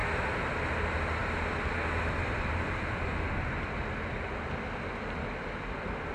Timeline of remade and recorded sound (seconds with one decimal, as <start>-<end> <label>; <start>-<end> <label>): 0.0-6.1 recorded